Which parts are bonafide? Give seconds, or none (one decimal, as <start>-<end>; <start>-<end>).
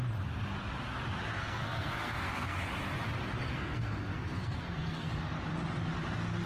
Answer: 0.0-1.3; 2.7-3.5; 5.1-6.5